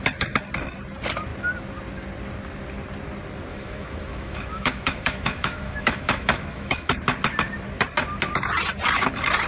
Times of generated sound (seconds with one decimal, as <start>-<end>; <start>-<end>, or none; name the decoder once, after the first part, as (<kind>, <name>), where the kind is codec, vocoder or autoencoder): 3.5-6.9 (autoencoder, DAC-VAE)